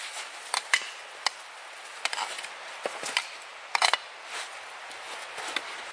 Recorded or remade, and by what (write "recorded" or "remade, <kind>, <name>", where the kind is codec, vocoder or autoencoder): recorded